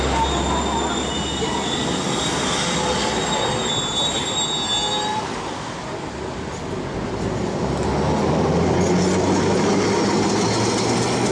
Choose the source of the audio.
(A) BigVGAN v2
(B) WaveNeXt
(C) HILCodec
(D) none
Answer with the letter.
D